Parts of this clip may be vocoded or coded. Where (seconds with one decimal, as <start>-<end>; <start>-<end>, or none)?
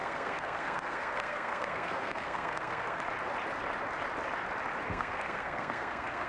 0.0-3.0; 4.9-6.3